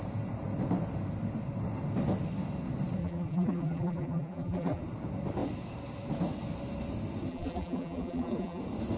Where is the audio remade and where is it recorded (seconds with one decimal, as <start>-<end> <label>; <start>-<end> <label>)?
0.0-3.0 recorded; 3.0-4.8 remade; 4.8-7.3 recorded; 7.3-8.6 remade; 8.6-9.0 recorded